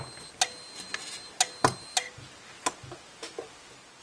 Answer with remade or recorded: recorded